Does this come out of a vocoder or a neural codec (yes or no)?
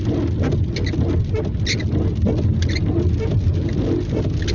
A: no